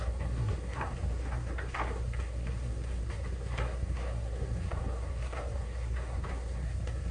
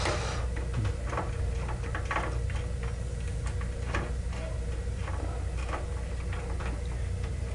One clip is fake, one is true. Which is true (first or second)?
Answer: second